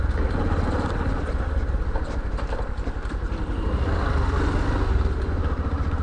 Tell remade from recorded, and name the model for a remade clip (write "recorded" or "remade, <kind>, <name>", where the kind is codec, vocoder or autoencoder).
recorded